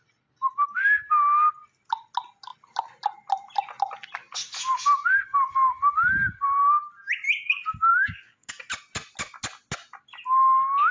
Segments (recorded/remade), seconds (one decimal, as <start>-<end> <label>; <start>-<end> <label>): 0.0-7.9 recorded; 7.9-8.5 remade; 8.5-10.9 recorded